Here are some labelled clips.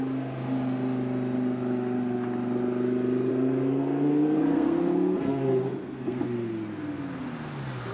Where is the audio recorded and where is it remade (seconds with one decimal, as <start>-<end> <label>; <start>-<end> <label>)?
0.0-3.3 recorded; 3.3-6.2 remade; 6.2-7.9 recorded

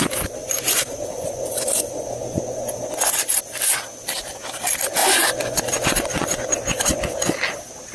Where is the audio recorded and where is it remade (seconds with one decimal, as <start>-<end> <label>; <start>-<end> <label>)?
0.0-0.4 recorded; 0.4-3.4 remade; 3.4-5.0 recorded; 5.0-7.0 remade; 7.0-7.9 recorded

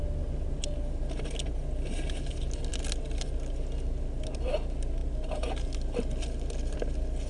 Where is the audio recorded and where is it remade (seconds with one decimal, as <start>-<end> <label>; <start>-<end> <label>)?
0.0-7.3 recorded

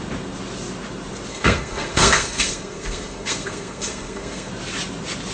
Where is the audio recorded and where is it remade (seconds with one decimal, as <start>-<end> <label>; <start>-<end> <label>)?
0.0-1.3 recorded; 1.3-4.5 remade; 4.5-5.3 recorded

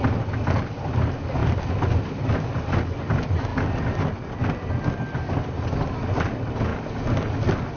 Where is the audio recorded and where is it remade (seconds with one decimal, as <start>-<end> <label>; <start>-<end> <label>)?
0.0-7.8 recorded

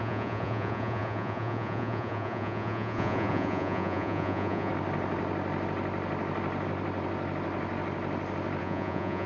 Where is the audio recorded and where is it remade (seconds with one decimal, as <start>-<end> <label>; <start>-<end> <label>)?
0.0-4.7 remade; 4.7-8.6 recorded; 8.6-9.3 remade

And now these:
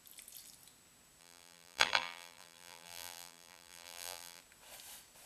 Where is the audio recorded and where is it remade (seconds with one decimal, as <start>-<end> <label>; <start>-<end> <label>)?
0.0-1.2 recorded; 1.2-4.4 remade; 4.4-5.3 recorded